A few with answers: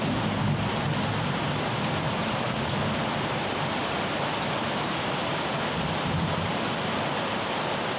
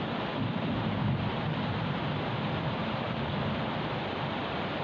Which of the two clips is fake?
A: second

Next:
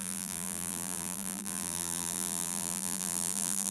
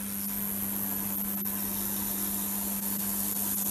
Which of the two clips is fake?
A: first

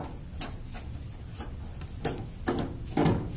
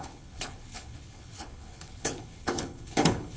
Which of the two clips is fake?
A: second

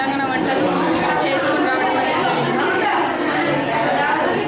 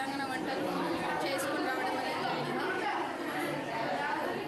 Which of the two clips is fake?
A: second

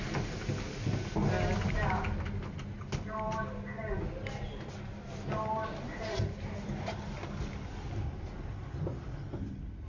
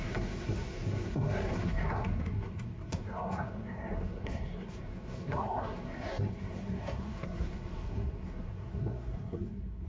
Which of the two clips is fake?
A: second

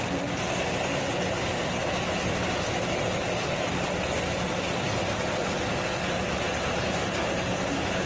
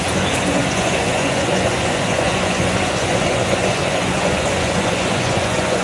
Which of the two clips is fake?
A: second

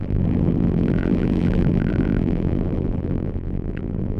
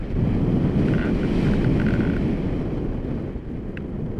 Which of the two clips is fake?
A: first